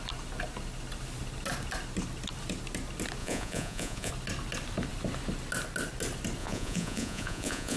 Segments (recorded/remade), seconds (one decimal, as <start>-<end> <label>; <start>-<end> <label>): 0.0-3.2 recorded; 3.2-4.1 remade; 4.1-6.4 recorded; 6.4-7.8 remade